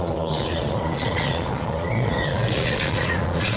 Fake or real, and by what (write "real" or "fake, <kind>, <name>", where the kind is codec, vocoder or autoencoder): fake, vocoder, Vocos